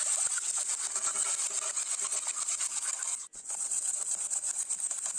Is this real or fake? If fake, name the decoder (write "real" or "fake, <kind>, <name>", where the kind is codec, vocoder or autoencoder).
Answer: real